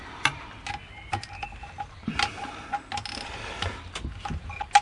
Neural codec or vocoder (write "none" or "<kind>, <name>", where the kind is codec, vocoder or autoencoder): none